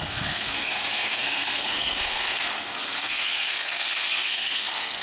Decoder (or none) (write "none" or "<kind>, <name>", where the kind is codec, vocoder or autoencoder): codec, SNAC